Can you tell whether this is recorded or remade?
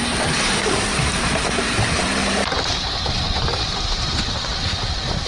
remade